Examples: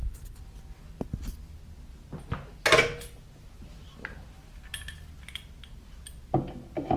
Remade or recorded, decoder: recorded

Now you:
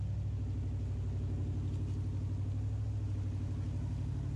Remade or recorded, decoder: recorded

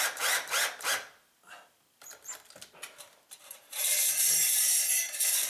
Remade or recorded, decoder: recorded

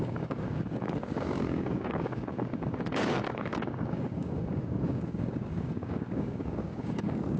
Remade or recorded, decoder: remade, codec, DAC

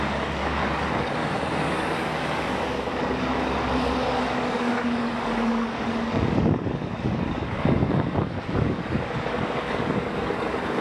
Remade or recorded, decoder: remade, codec, DAC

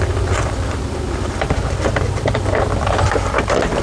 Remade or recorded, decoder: remade, vocoder, BigVGAN v2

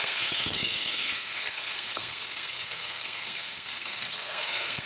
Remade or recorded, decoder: remade, codec, SNAC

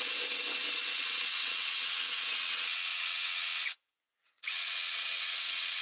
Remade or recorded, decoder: remade, vocoder, WaveNeXt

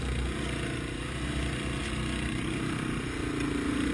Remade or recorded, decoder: recorded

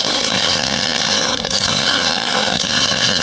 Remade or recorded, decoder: remade, codec, SNAC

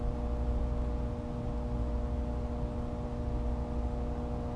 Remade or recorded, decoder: recorded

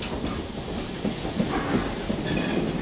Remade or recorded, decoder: recorded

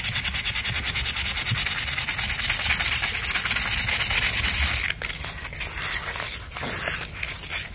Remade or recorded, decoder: recorded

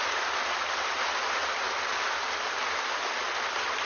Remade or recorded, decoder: recorded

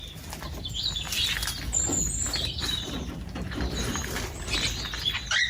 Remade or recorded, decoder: recorded